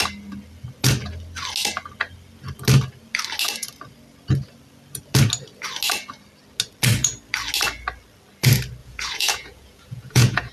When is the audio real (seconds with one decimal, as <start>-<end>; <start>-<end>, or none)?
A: 0.0-8.8